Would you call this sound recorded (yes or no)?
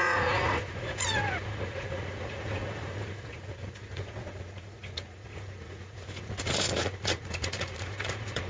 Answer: no